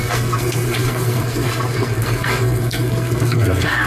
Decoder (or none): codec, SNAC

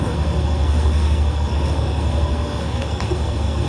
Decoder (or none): codec, SNAC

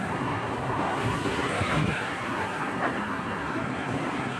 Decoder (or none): codec, SNAC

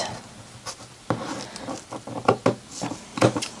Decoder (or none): none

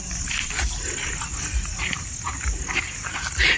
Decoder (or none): none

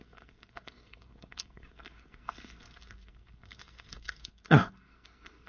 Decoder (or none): codec, SNAC